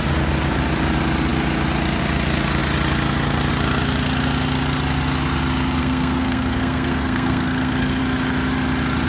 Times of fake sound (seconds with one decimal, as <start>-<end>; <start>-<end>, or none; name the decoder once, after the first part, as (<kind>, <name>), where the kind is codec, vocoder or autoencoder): 5.8-8.0 (codec, SNAC)